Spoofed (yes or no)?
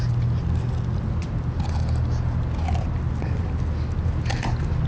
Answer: no